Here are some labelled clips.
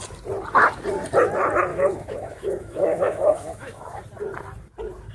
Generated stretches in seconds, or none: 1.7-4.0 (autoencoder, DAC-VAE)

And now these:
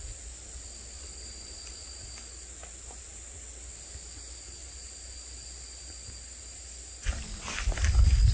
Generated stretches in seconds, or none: none

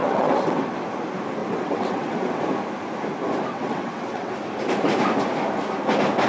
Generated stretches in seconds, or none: 0.0-0.6 (vocoder, WaveNeXt); 1.4-2.4; 3.5-4.3